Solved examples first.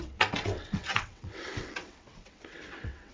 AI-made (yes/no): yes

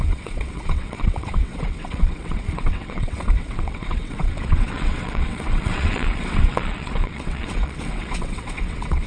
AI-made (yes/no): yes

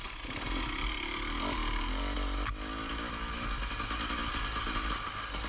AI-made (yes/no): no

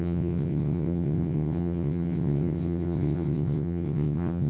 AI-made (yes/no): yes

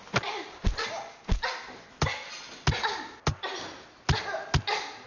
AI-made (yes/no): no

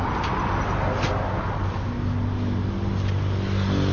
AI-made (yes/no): no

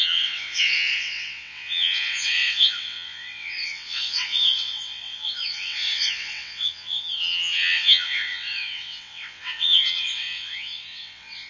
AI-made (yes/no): yes